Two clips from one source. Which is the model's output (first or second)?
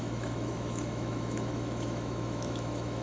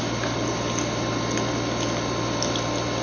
first